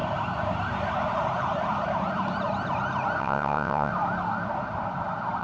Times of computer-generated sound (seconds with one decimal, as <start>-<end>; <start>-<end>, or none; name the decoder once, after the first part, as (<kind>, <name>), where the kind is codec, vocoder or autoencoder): 3.2-3.9 (vocoder, WaveNeXt)